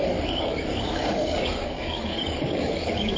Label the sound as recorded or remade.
remade